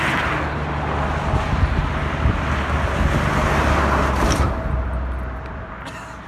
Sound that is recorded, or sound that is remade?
recorded